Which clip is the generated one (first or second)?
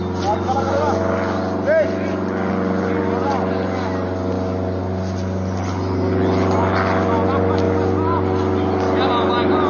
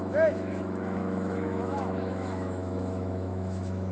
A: second